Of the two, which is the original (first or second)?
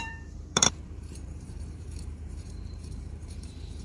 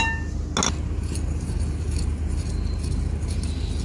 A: second